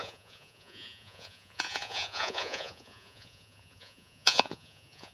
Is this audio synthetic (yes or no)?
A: yes